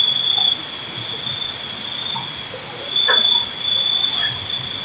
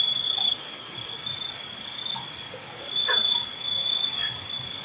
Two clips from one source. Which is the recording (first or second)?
first